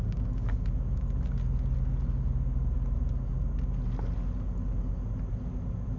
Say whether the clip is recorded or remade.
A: recorded